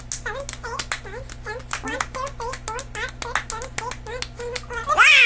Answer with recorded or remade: recorded